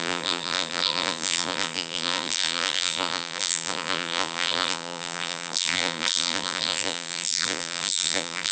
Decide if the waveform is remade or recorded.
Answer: remade